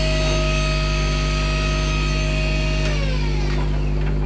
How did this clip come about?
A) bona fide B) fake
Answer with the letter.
A